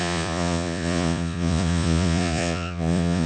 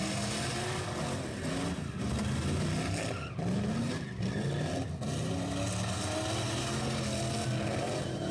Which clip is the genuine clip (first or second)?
second